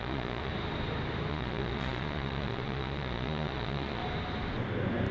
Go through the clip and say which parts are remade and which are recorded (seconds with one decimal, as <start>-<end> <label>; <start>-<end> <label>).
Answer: 0.0-0.5 remade; 0.5-1.3 recorded; 1.3-4.0 remade; 4.0-5.1 recorded